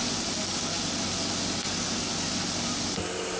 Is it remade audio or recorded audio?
recorded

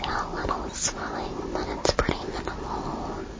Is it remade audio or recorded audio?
recorded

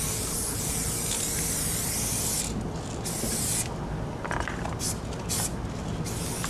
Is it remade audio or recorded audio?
recorded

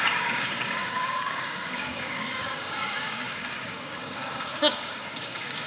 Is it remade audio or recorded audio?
remade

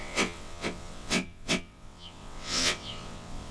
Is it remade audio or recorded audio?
remade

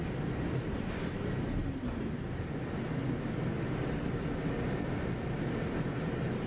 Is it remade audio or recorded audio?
recorded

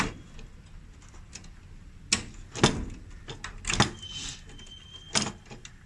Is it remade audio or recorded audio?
recorded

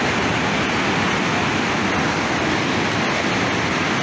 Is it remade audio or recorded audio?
recorded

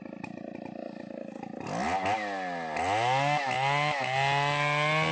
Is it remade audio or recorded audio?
recorded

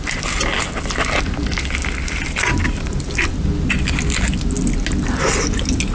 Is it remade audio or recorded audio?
recorded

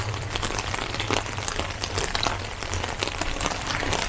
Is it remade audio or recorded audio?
remade